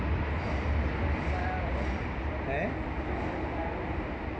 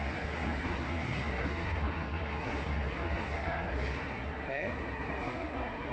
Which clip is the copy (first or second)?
second